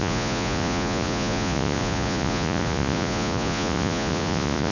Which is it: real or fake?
fake